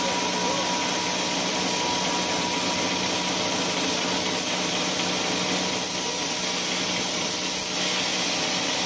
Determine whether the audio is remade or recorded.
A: recorded